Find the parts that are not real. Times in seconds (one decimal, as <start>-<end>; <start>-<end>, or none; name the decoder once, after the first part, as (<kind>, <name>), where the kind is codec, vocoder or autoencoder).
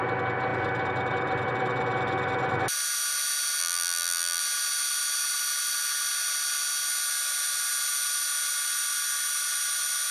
3.6-4.4 (vocoder, BigVGAN v2)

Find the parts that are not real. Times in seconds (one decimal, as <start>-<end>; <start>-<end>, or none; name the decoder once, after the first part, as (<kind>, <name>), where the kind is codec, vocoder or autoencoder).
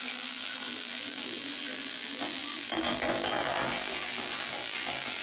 0.0-5.2 (vocoder, BigVGAN v2)